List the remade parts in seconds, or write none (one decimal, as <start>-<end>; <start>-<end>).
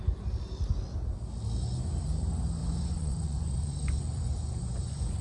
2.6-5.2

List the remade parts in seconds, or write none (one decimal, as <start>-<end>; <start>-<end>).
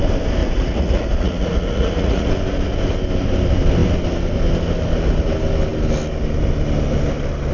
0.4-2.3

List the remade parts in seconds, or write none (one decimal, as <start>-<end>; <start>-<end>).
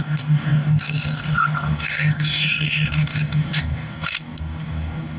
0.0-5.2